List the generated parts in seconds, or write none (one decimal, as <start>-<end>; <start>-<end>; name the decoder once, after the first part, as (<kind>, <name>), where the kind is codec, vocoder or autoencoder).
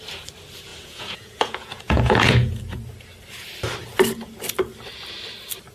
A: 0.7-2.6 (vocoder, Vocos)